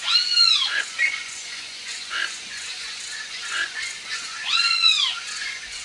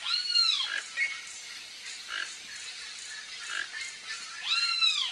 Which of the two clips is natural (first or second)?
second